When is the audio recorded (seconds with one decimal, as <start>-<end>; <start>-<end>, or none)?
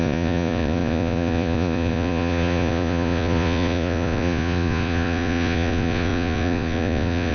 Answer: none